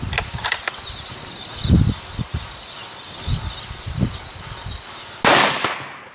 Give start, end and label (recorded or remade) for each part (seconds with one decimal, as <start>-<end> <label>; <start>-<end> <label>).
0.0-6.1 recorded